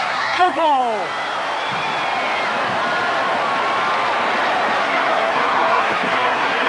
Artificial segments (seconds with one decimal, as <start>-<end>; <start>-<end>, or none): 0.0-0.8; 4.8-6.7